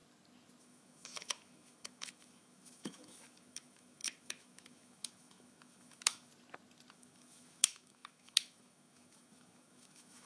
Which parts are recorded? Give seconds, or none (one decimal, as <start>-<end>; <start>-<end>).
0.0-0.6; 6.3-6.9